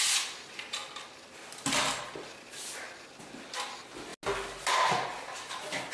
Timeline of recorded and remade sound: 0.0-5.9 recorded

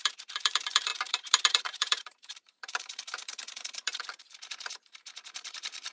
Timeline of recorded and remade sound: 0.0-5.9 remade

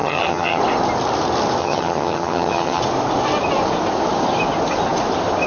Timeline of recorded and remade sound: 0.0-0.6 remade; 0.6-1.6 recorded; 1.6-2.8 remade; 2.8-5.5 recorded

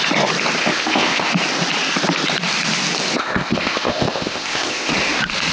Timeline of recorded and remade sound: 0.0-0.6 recorded; 0.6-1.3 remade; 1.3-3.2 recorded; 3.2-4.9 remade; 4.9-5.5 recorded

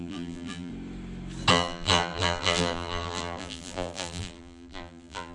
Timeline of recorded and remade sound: 0.0-0.7 remade; 0.7-1.5 recorded; 1.5-5.3 remade

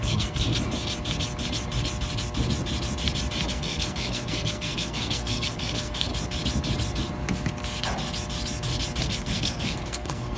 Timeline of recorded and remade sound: 0.0-0.5 remade; 0.5-3.5 recorded; 3.5-6.1 remade; 6.1-9.0 recorded; 9.0-10.4 remade

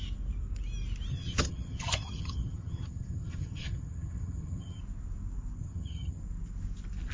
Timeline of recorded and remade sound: 0.0-1.1 recorded; 1.1-4.8 remade; 4.8-5.6 recorded; 5.6-6.2 remade; 6.2-7.1 recorded